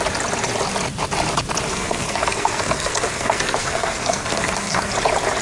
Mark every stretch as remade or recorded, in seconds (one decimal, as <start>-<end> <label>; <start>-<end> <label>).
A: 0.0-1.7 recorded; 1.7-4.9 remade; 4.9-5.4 recorded